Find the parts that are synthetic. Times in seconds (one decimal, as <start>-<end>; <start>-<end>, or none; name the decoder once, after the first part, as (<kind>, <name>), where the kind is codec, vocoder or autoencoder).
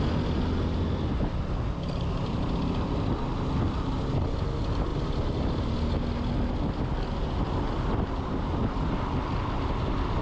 none